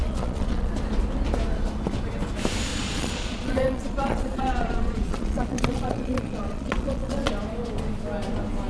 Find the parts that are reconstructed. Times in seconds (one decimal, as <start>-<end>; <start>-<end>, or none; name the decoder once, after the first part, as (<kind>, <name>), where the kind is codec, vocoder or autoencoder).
0.0-0.7 (vocoder, Vocos); 2.7-7.3

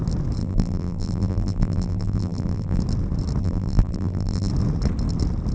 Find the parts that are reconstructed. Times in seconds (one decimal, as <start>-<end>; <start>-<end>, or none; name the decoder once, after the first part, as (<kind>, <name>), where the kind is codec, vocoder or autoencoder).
0.4-2.8 (vocoder, BigVGAN v2); 3.4-4.5

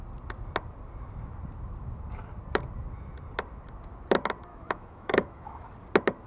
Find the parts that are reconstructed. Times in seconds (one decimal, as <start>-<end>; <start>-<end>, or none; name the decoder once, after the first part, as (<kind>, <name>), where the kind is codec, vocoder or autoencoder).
4.5-5.7 (autoencoder, DAC-VAE)

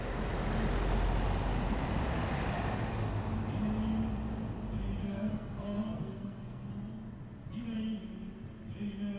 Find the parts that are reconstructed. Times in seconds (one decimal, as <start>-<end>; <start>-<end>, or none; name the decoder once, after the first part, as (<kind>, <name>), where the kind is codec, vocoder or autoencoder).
5.0-6.7 (codec, SNAC)

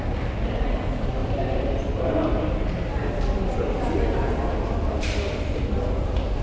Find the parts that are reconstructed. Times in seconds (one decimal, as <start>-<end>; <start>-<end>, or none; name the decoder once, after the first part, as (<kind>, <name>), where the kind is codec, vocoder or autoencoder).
none

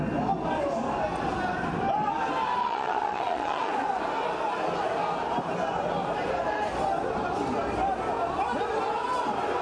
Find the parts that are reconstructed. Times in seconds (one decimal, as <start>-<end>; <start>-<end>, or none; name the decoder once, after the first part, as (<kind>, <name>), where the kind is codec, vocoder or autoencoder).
2.6-3.7 (vocoder, Vocos)

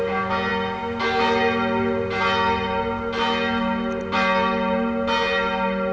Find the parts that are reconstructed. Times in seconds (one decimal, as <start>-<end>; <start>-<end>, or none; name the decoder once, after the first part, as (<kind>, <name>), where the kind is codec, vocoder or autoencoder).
none

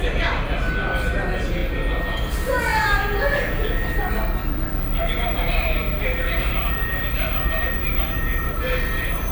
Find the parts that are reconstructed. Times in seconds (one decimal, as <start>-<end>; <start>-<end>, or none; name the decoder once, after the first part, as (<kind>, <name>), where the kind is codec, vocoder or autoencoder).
none